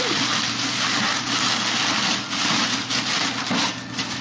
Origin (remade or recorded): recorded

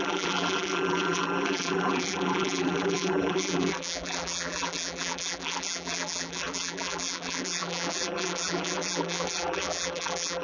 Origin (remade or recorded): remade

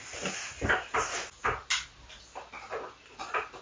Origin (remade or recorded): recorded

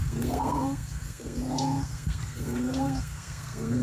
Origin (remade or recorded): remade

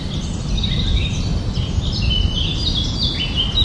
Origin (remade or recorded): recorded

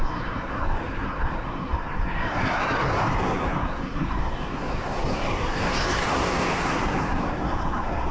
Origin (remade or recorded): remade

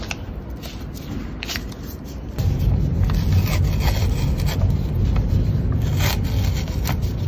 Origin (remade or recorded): recorded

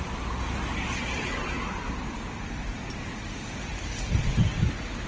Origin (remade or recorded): recorded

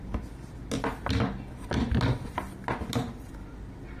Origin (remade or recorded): recorded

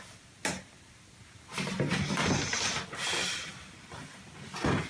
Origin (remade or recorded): recorded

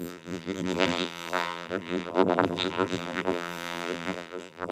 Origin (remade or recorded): remade